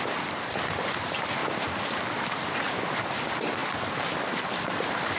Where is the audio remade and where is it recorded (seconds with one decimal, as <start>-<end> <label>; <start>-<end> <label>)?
0.0-1.4 remade; 1.4-2.2 recorded; 2.2-5.2 remade